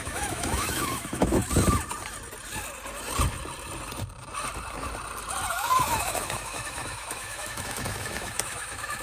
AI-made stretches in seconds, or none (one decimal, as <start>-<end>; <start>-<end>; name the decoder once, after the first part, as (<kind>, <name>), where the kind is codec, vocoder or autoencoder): 0.0-1.4 (autoencoder, DAC-VAE); 5.5-9.0